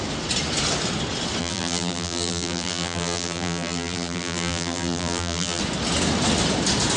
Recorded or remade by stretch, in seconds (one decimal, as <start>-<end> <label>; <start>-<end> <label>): 0.0-1.4 recorded; 1.4-5.6 remade; 5.6-7.0 recorded